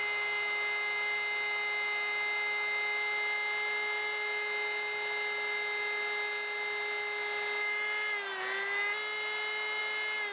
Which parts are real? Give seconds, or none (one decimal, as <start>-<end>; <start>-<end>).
0.0-10.3